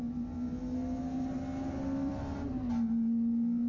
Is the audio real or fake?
real